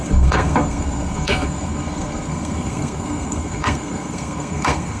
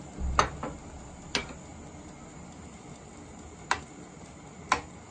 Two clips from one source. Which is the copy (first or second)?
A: first